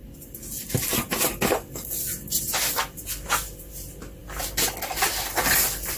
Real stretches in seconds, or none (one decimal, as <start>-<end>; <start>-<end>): 0.0-6.0